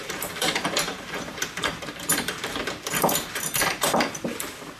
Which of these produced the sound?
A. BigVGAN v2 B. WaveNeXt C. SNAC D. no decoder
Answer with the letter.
A